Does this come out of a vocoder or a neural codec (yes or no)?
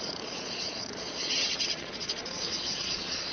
yes